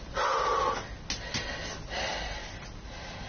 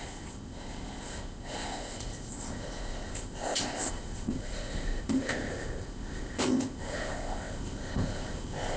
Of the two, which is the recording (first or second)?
first